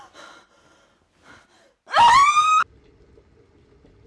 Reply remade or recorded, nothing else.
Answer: recorded